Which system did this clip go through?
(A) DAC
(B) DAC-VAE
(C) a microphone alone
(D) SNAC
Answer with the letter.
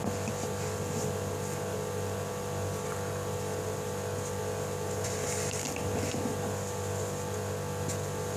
C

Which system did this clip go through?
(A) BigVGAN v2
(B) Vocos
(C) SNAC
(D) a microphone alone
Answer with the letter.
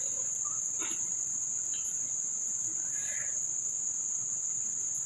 D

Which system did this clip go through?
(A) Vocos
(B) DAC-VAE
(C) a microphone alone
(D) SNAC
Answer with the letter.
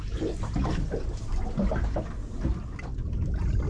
C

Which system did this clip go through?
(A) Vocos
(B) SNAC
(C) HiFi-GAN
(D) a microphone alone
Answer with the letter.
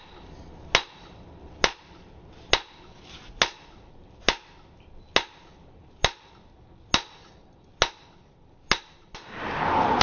D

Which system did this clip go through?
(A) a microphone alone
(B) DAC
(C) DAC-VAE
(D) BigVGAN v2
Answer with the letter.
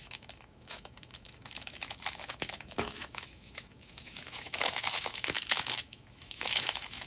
C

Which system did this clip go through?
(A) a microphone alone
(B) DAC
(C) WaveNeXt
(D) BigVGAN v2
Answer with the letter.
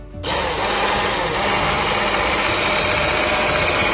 A